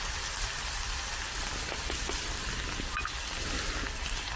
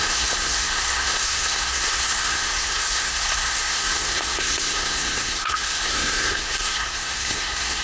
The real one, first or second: first